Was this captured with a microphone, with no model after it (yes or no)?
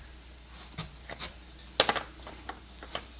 yes